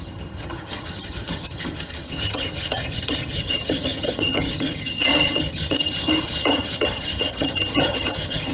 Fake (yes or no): yes